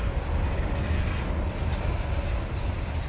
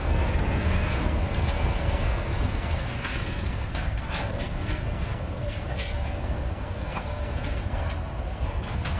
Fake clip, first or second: second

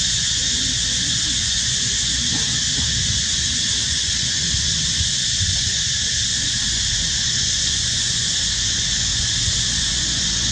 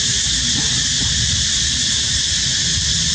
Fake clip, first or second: first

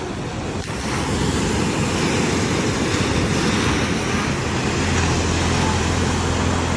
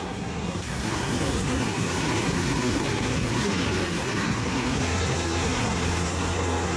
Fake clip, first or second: second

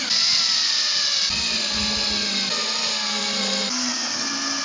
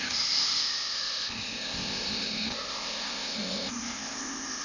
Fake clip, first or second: second